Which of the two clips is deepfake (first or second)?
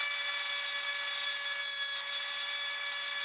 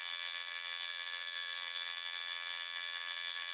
second